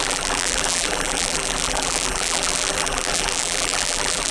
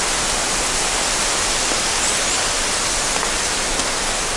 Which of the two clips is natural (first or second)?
second